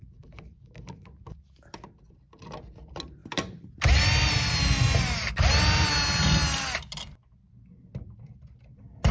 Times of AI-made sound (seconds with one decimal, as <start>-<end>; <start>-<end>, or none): none